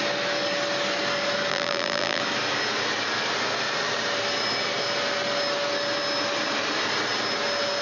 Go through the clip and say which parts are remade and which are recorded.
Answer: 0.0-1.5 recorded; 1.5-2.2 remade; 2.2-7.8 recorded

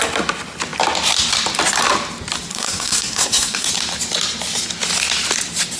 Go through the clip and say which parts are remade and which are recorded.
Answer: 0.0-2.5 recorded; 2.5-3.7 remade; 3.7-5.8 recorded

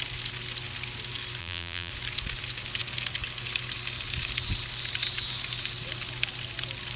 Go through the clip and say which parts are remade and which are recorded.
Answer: 0.0-1.4 recorded; 1.4-1.9 remade; 1.9-7.0 recorded

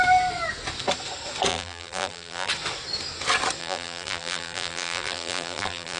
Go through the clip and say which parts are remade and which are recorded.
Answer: 0.0-1.5 recorded; 1.5-2.5 remade; 2.5-3.6 recorded; 3.6-6.0 remade

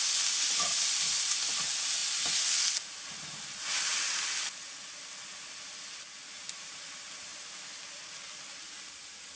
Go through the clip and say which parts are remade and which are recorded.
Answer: 0.0-9.4 recorded

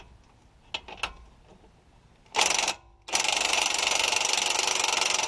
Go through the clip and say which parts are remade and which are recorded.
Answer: 0.0-5.3 recorded

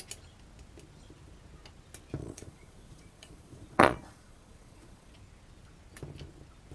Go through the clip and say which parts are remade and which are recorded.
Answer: 0.0-2.2 recorded; 2.2-5.2 remade; 5.2-6.7 recorded

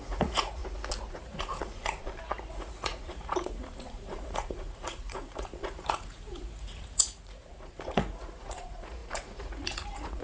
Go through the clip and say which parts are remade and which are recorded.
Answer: 0.0-0.6 remade; 0.6-1.1 recorded; 1.1-2.0 remade; 2.0-2.5 recorded; 2.5-10.2 remade